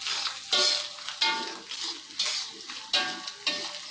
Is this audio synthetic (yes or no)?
no